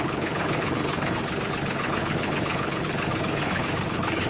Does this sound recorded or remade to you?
remade